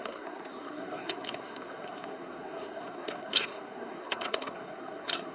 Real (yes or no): no